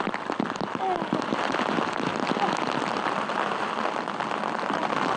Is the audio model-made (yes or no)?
no